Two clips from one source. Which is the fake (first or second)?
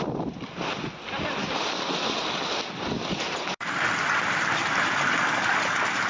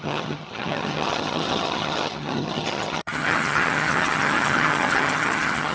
second